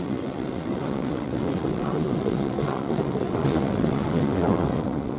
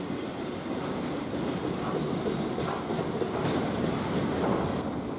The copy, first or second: first